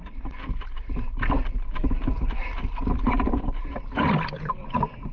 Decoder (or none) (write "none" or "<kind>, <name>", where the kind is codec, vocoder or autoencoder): vocoder, BigVGAN v2